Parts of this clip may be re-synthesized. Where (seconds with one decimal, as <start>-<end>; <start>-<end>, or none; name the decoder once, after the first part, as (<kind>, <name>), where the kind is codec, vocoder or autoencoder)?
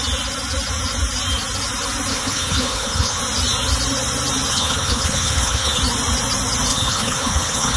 2.1-3.2 (codec, HILCodec); 4.5-5.8; 6.7-7.8